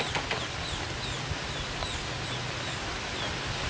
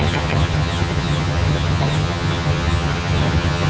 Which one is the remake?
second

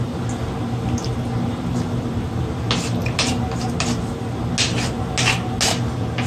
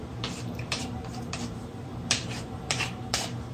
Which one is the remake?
second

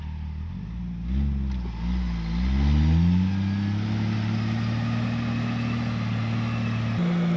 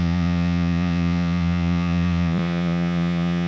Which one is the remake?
second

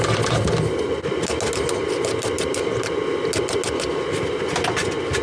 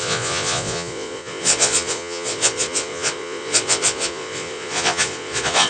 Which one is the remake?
second